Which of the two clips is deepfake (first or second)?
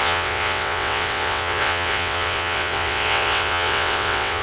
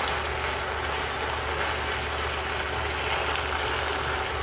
first